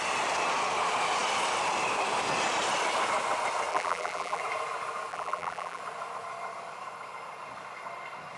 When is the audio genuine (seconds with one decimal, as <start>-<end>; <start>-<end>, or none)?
0.0-3.7; 4.4-5.1; 5.8-8.4